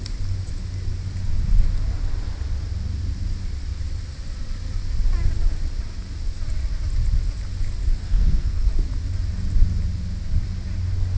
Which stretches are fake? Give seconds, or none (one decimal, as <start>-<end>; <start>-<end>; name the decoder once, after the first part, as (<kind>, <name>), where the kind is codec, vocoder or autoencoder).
8.1-8.7 (codec, SNAC)